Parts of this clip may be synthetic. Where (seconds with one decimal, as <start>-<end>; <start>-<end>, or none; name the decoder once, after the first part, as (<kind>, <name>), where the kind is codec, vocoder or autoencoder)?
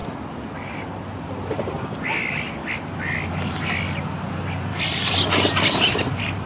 none